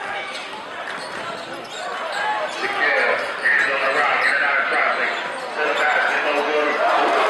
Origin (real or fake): real